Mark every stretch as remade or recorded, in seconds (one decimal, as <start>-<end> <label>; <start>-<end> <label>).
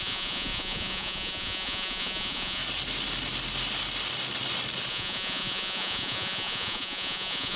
0.0-2.6 remade; 2.6-4.9 recorded; 4.9-7.6 remade